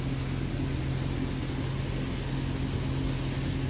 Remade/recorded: recorded